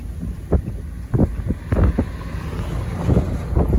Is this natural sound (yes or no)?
yes